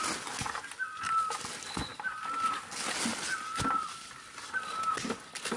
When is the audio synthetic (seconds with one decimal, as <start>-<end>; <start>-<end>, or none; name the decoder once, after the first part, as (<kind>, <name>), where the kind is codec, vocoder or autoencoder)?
none

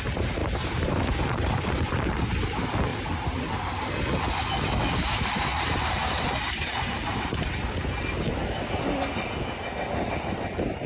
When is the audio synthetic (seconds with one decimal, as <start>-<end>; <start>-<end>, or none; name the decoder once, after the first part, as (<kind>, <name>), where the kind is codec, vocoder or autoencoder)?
0.4-2.2 (vocoder, BigVGAN v2); 2.9-4.0; 5.5-7.7

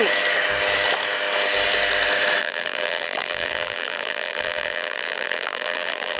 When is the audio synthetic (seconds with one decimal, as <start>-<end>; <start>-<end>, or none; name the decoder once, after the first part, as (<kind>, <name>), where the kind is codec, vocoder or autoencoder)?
2.4-6.2 (vocoder, BigVGAN v2)

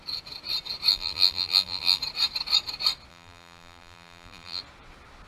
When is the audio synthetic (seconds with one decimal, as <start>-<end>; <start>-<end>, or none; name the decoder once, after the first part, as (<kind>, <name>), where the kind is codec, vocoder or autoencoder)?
0.9-2.0 (vocoder, BigVGAN v2); 3.1-4.6

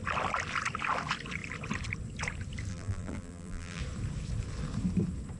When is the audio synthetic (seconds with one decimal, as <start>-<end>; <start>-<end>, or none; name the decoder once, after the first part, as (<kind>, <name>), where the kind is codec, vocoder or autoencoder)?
2.7-3.8 (vocoder, BigVGAN v2)

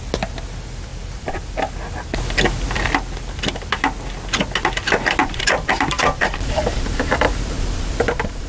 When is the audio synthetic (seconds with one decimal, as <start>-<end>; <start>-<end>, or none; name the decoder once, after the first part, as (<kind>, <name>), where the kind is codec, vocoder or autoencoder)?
0.9-1.7 (vocoder, BigVGAN v2); 5.2-8.5